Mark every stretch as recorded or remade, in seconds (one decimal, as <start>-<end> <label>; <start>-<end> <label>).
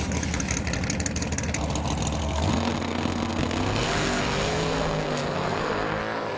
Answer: 0.0-2.2 recorded; 2.2-6.0 remade; 6.0-6.4 recorded